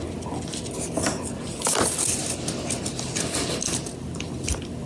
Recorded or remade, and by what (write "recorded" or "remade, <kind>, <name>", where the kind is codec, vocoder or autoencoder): recorded